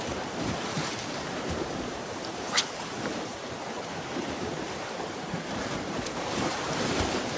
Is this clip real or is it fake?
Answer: fake